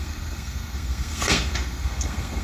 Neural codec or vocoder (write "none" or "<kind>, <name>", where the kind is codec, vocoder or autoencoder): codec, SNAC